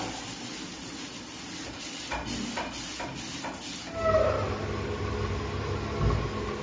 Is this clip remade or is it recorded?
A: recorded